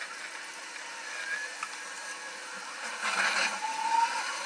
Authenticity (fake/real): real